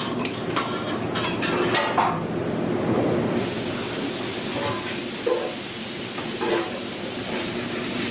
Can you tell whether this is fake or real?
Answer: real